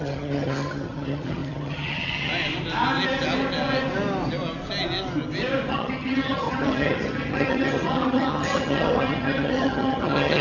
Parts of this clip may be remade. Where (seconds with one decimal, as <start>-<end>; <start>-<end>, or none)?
0.0-2.3; 5.7-10.4